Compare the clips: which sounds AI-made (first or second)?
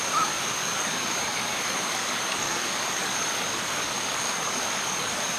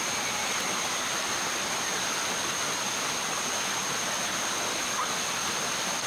first